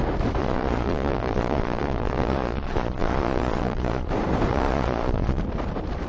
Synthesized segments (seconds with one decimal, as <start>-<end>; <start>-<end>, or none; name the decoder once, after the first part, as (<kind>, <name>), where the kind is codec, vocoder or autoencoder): 0.4-4.1 (vocoder, Vocos); 4.5-5.4